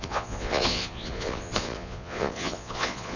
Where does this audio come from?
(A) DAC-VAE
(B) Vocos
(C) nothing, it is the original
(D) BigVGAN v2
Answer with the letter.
B